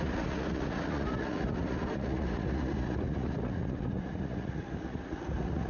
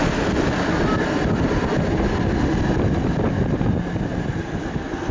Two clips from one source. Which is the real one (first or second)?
second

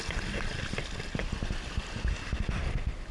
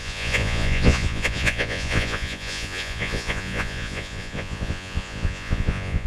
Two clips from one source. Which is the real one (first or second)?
first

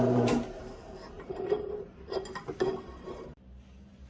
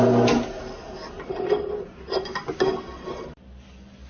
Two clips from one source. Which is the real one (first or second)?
second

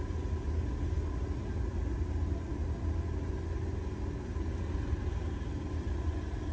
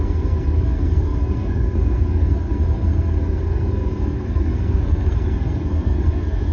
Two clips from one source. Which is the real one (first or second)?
first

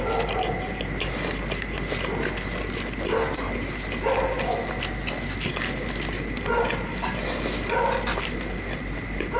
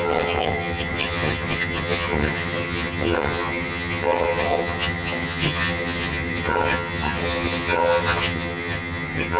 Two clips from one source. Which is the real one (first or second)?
first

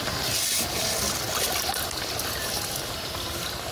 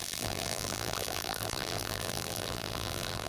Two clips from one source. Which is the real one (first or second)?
first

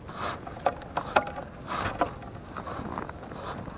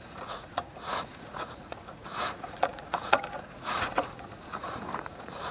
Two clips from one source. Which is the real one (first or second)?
first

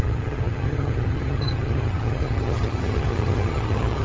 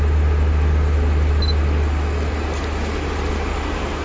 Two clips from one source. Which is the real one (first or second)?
second